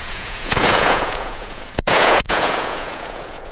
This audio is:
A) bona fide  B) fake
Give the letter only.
B